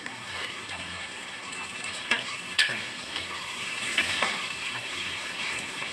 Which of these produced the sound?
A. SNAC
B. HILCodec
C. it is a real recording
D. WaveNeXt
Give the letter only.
A